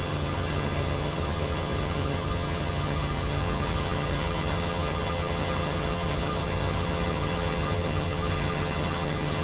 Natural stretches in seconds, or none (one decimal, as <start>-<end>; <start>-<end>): none